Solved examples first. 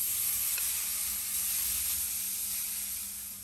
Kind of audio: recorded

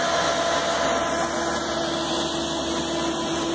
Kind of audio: recorded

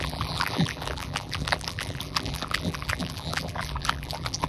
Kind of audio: remade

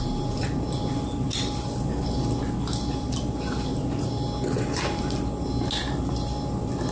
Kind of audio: recorded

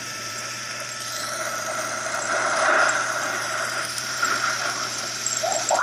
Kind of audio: remade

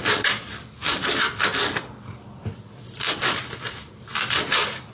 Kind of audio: remade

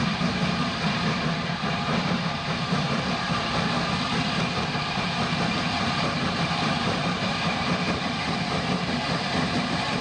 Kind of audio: remade